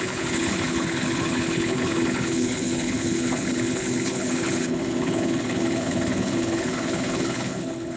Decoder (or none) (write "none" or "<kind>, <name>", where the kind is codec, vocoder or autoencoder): codec, HILCodec